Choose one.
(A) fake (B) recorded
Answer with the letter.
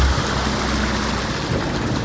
B